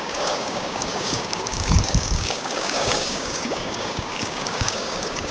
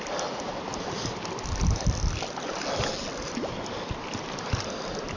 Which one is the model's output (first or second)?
first